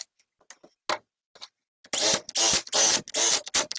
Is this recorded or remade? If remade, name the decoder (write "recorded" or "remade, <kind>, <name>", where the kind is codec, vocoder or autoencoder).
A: recorded